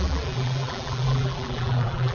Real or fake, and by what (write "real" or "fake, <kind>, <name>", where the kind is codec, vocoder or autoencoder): fake, vocoder, BigVGAN v2